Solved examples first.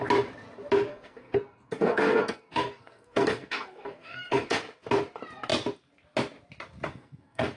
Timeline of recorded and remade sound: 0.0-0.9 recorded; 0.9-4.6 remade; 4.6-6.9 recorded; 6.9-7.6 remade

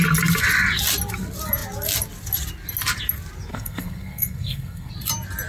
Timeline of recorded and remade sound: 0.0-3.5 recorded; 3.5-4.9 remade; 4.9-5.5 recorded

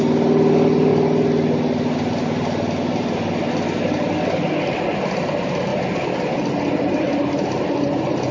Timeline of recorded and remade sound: 0.0-8.3 recorded

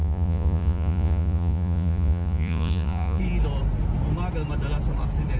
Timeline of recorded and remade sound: 0.0-3.2 remade; 3.2-5.4 recorded

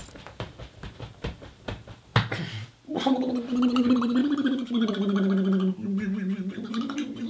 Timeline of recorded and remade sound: 0.0-2.1 remade; 2.1-2.9 recorded; 2.9-4.2 remade; 4.2-4.9 recorded; 4.9-5.8 remade; 5.8-6.8 recorded; 6.8-7.3 remade

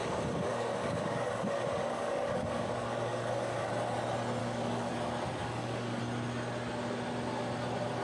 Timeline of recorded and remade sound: 0.0-3.7 remade; 3.7-4.4 recorded; 4.4-4.9 remade; 4.9-5.4 recorded; 5.4-6.0 remade; 6.0-8.0 recorded